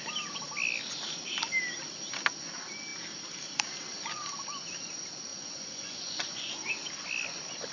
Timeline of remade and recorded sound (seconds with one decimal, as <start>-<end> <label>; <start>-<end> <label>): 0.0-5.3 recorded; 5.3-6.5 remade; 6.5-7.7 recorded

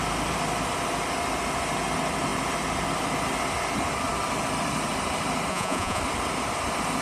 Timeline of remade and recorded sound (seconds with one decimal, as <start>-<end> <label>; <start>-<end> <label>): 0.0-5.5 recorded; 5.5-6.0 remade; 6.0-7.0 recorded

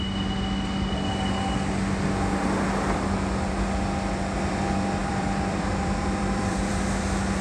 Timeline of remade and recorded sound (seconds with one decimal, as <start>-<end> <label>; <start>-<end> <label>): 0.0-5.0 recorded; 5.0-6.7 remade; 6.7-7.4 recorded

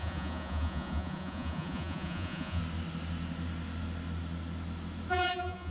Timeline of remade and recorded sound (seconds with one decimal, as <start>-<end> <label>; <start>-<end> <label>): 0.0-2.6 remade; 2.6-5.1 recorded; 5.1-5.7 remade

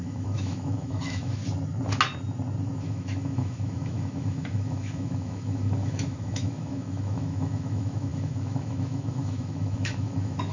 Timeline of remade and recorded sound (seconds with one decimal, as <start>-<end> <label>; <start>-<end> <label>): 0.0-1.4 remade; 1.4-2.8 recorded; 2.8-10.5 remade

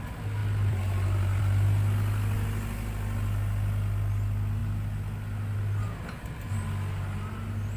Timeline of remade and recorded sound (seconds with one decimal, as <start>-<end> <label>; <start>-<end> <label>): 0.0-0.4 recorded; 0.4-1.4 remade; 1.4-7.8 recorded